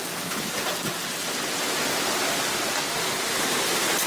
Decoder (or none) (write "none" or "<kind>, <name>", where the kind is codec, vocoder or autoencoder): none